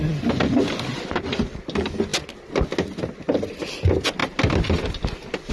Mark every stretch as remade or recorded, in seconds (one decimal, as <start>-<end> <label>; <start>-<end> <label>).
0.0-5.5 recorded